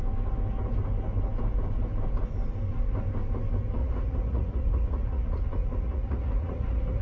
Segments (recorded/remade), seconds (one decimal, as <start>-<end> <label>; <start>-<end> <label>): 0.0-3.8 recorded; 3.8-7.0 remade